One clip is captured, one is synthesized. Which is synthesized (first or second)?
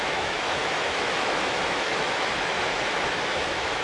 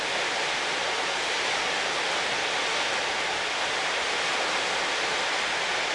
first